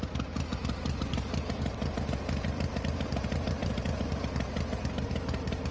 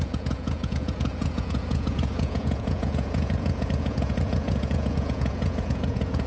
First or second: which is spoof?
second